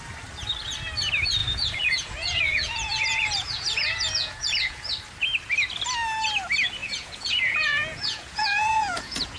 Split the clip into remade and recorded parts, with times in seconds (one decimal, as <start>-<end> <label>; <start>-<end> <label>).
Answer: 0.0-1.4 recorded; 1.4-4.9 remade; 4.9-6.8 recorded; 6.8-9.4 remade